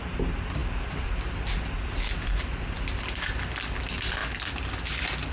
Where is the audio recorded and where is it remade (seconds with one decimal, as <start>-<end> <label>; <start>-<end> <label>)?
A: 0.0-5.3 recorded